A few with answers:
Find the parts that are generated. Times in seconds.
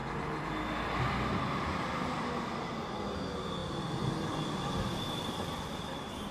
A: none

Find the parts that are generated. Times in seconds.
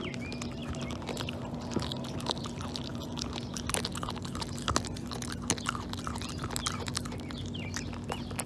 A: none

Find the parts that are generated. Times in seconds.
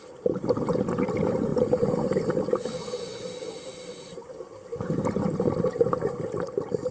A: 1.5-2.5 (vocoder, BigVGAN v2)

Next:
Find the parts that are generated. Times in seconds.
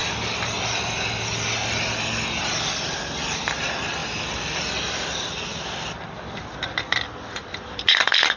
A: none